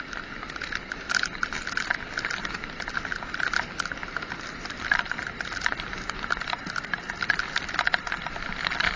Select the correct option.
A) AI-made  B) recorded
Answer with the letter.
B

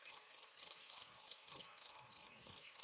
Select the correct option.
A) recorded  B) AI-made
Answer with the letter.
B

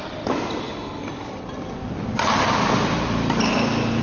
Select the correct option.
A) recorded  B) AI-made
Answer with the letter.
A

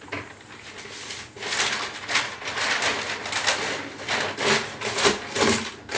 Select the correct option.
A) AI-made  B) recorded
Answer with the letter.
B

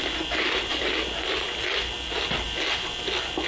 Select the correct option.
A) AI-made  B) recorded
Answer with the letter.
B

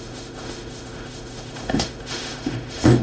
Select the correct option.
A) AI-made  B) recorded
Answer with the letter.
A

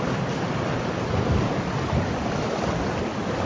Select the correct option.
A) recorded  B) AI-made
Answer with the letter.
A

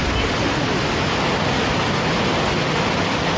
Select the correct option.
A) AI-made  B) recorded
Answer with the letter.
B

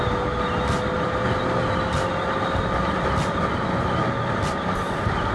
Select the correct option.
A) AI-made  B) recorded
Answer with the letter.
B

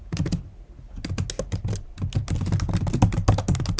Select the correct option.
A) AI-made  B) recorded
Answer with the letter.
B